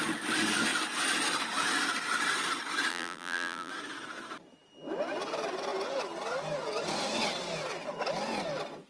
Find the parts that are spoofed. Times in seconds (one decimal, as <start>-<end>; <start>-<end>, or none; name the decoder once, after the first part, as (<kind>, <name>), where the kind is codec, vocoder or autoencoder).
2.9-3.7 (vocoder, BigVGAN v2)